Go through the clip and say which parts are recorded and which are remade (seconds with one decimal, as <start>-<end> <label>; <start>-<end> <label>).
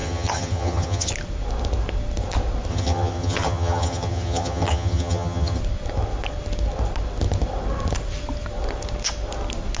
0.0-1.1 remade; 1.1-2.7 recorded; 2.7-5.6 remade; 5.6-9.8 recorded